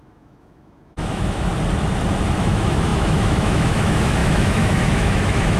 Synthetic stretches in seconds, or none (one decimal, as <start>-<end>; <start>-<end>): 0.0-1.5; 2.4-5.6